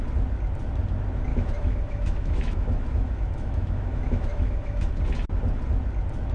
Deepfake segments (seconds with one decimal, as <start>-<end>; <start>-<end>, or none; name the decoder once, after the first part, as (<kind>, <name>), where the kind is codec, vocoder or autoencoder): 1.3-4.9 (autoencoder, DAC-VAE)